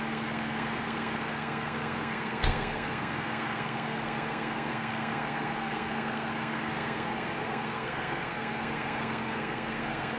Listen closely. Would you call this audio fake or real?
fake